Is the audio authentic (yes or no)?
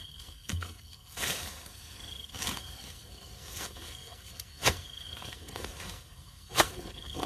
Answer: no